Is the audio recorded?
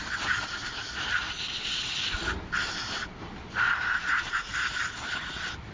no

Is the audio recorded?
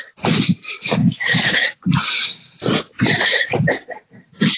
no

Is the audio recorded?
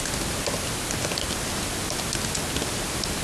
yes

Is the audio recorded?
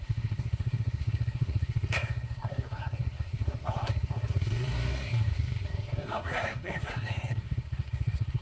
no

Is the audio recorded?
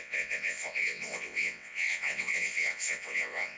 no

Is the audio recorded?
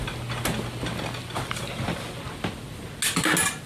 yes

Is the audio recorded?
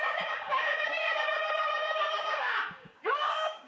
no